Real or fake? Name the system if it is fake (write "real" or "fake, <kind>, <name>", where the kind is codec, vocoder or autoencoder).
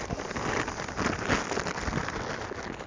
real